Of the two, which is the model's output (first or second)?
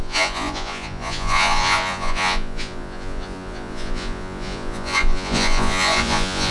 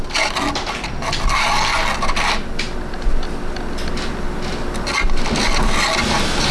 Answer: first